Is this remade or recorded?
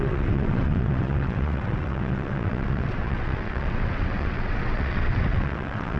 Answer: remade